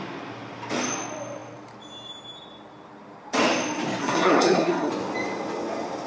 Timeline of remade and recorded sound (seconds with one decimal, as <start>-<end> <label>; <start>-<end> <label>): 0.0-4.0 recorded; 4.0-4.9 remade; 4.9-6.1 recorded